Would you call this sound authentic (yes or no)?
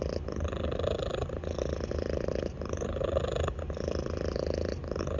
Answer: yes